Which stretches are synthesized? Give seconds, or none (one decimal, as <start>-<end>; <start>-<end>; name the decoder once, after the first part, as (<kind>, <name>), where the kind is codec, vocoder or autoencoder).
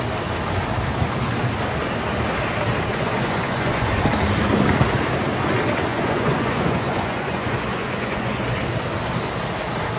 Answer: 2.9-3.9 (vocoder, Vocos); 5.9-8.4